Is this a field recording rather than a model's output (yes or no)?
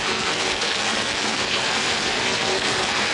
no